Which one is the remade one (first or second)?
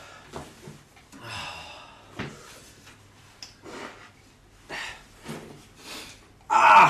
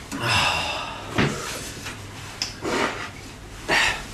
second